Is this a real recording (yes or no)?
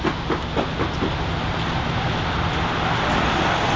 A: yes